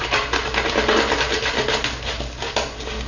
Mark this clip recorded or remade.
recorded